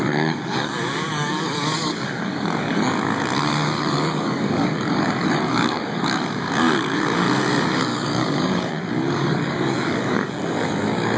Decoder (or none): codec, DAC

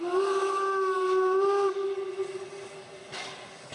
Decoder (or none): none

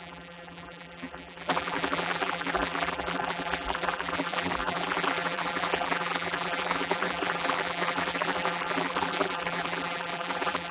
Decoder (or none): vocoder, BigVGAN v2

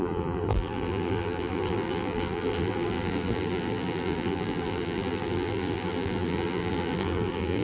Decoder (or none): vocoder, BigVGAN v2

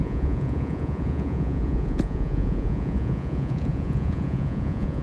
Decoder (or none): vocoder, Vocos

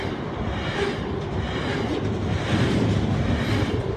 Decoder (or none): none